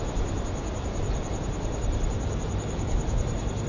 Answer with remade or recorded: recorded